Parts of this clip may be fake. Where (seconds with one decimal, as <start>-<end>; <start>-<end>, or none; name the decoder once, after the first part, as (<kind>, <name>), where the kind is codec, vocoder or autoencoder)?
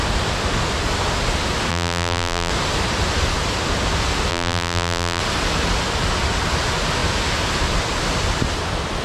1.7-2.5 (vocoder, BigVGAN v2); 4.3-5.2